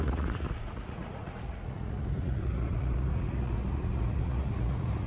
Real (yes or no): no